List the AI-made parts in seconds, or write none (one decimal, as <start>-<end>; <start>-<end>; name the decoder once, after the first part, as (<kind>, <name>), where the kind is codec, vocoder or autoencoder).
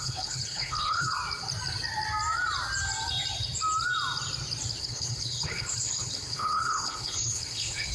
0.0-1.2 (codec, HILCodec); 4.8-7.9